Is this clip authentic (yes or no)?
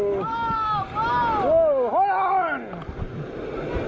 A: yes